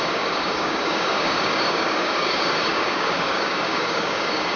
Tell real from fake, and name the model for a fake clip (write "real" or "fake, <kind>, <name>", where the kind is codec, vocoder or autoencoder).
fake, codec, DAC